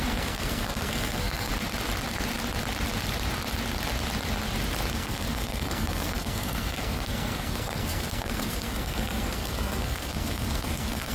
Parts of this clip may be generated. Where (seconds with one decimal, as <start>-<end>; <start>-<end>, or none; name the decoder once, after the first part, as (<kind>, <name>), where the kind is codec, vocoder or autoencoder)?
0.0-1.5 (codec, SNAC); 4.9-11.1